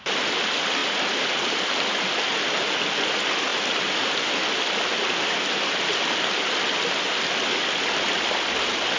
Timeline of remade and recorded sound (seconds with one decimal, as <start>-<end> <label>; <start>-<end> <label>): 0.0-9.0 recorded